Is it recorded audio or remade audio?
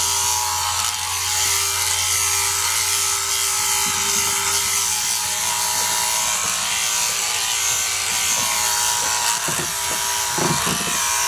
recorded